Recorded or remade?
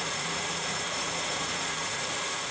remade